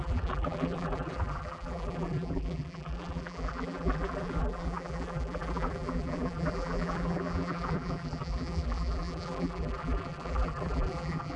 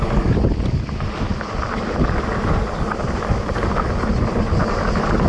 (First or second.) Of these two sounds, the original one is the second